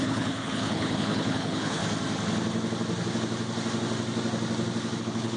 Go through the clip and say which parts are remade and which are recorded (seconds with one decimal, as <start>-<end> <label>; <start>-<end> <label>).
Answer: 0.0-1.8 remade; 1.8-5.0 recorded; 5.0-5.4 remade